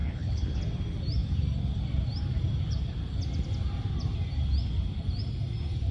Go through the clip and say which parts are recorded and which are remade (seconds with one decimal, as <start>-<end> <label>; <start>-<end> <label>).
0.0-0.6 remade; 0.6-5.9 recorded